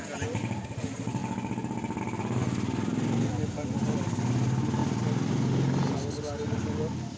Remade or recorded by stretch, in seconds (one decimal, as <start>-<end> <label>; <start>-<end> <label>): 0.0-7.2 recorded